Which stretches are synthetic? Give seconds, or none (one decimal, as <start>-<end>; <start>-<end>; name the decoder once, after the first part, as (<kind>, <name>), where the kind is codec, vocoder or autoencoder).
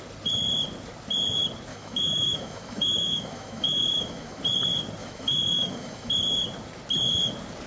1.7-4.4 (autoencoder, DAC-VAE); 5.0-6.1